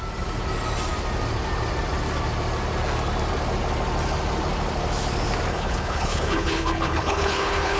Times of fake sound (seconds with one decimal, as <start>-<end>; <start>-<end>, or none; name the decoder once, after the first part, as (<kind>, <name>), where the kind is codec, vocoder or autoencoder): 5.5-7.8 (codec, HILCodec)

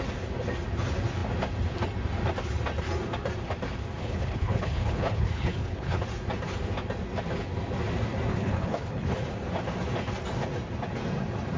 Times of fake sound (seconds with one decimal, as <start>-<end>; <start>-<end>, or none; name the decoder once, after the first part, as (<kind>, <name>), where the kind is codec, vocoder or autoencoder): 4.0-6.0 (codec, HILCodec); 8.3-9.1

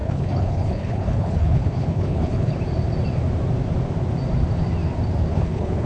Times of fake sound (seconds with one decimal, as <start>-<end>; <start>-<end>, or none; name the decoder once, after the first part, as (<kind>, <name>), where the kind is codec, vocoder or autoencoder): 0.0-2.5 (codec, HILCodec); 5.3-5.9

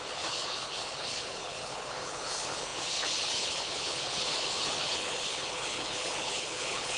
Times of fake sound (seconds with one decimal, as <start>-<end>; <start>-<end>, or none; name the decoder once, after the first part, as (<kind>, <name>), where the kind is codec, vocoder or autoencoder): 0.0-7.0 (codec, HILCodec)

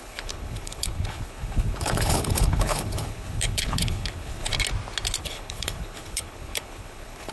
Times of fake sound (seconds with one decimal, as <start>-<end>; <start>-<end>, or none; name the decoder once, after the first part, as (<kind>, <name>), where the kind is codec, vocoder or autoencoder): 0.0-4.5 (codec, HILCodec); 5.2-7.3

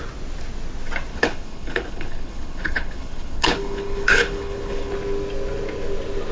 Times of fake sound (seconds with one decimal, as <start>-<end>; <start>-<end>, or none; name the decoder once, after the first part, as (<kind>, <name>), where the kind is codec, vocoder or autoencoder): 1.1-4.9 (codec, HILCodec)

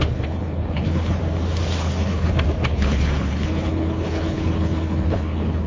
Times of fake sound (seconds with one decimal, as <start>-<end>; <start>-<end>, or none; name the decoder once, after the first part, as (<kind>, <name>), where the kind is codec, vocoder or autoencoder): 0.0-1.2 (codec, HILCodec); 1.8-2.3; 2.7-5.7